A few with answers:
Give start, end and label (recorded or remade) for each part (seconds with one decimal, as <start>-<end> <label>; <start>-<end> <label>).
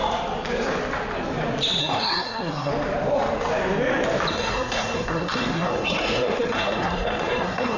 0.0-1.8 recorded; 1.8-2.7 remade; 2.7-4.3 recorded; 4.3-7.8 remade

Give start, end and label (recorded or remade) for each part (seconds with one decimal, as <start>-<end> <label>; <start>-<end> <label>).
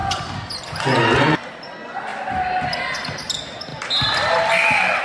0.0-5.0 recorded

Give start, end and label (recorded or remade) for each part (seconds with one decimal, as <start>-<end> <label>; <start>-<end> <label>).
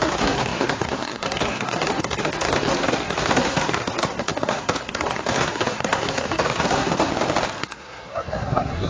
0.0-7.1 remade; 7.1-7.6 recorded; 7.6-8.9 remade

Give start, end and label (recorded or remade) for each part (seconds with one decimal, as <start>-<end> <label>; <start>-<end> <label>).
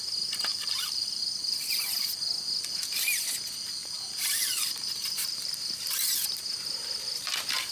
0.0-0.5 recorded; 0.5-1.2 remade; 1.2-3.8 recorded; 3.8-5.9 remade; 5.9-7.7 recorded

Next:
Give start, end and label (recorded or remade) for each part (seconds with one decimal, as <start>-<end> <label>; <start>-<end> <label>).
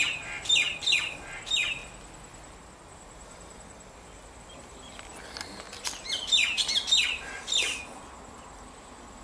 0.0-9.2 recorded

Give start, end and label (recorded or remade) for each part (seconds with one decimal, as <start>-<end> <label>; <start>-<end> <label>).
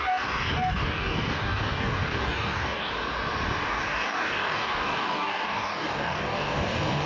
0.0-2.9 remade; 2.9-3.7 recorded; 3.7-7.1 remade